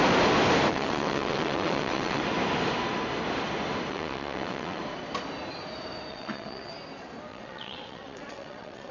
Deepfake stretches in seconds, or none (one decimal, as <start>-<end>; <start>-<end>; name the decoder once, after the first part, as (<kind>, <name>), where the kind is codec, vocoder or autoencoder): 0.7-2.2 (vocoder, WaveNeXt); 3.9-4.8; 6.1-6.7; 7.3-8.9